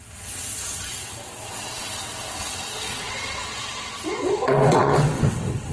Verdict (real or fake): fake